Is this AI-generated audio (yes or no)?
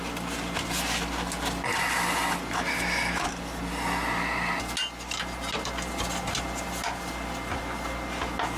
no